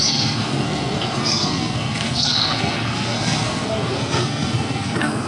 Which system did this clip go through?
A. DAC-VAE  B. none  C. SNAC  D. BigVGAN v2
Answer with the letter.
C